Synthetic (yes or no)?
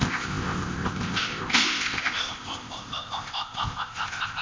yes